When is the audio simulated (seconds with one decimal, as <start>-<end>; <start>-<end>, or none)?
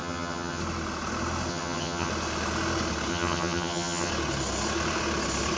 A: 0.0-0.6; 1.5-2.1; 3.1-4.1